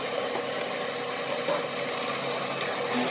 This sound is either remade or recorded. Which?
recorded